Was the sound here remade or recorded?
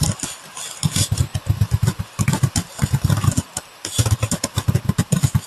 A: recorded